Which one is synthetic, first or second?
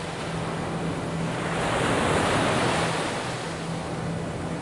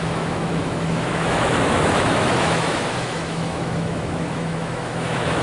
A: second